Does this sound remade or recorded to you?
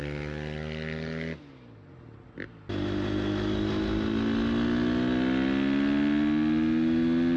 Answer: recorded